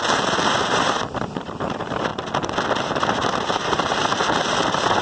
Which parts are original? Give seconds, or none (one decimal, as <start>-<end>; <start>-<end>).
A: 2.1-2.8